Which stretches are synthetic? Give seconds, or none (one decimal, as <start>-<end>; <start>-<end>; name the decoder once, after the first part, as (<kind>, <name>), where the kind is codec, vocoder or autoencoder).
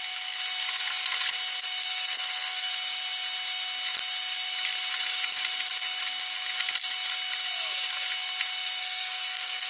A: 1.9-2.7 (codec, SNAC); 8.8-9.7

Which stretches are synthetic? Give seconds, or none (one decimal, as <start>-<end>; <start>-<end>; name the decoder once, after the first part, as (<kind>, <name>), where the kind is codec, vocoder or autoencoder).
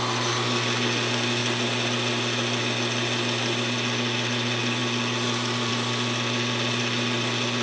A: none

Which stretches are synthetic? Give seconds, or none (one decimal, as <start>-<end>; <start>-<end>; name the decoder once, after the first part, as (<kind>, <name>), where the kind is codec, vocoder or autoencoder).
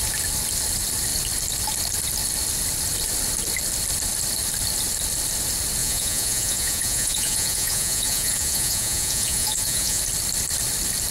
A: 5.8-10.0 (vocoder, Vocos)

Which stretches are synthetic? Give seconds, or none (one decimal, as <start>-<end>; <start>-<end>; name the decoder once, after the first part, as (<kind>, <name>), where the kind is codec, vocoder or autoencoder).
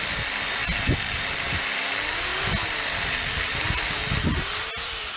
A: 0.0-0.6 (vocoder, BigVGAN v2); 1.8-2.3; 3.1-5.2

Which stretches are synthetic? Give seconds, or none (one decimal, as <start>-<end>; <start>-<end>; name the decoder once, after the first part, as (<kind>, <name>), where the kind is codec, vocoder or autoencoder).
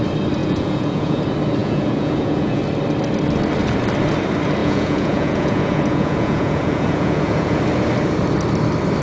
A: 0.4-1.2 (vocoder, Vocos); 1.6-2.6; 4.6-7.6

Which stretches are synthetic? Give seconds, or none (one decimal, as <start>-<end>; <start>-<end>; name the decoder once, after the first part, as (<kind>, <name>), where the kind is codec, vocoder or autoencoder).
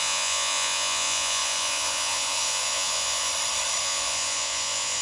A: 0.0-3.3 (vocoder, Vocos); 3.8-5.0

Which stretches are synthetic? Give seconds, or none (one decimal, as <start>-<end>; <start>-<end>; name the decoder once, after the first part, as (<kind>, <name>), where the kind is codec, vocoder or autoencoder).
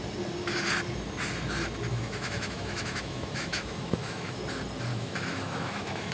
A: 1.9-4.4 (autoencoder, DAC-VAE); 4.9-6.1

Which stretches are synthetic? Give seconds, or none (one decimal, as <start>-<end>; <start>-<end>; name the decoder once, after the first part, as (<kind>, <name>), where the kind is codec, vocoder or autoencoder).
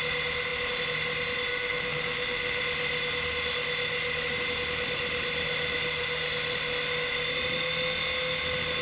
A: 1.5-2.6 (autoencoder, DAC-VAE)